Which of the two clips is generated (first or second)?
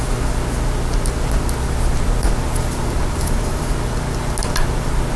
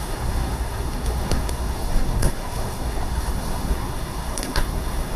second